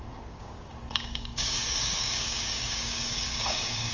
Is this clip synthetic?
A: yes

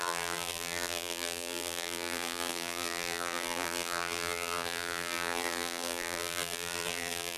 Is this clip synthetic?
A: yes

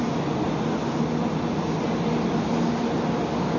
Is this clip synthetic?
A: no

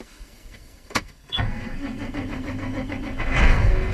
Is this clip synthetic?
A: yes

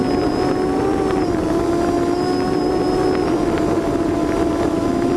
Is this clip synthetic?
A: no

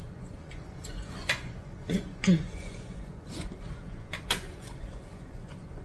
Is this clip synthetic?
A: yes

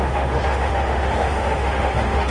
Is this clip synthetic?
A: yes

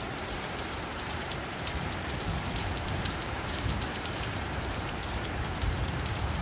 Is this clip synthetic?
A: yes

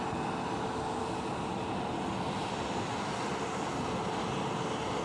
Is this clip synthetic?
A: no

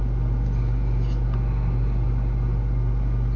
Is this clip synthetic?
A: no